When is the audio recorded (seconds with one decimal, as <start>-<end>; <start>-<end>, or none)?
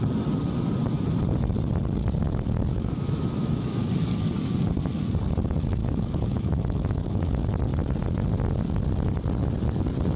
0.0-2.7; 3.9-5.8; 7.6-10.2